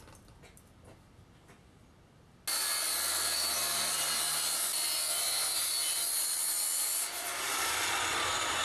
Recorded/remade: recorded